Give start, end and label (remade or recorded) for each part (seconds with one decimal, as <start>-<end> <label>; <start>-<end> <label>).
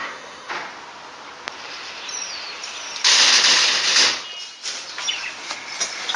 0.0-0.5 remade; 0.5-6.2 recorded